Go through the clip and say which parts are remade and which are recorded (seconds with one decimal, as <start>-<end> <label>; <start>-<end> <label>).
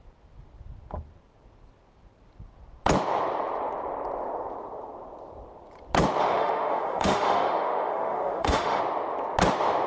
0.0-6.2 recorded; 6.2-8.8 remade; 8.8-9.9 recorded